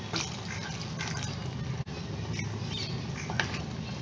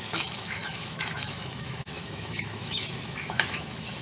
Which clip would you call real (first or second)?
first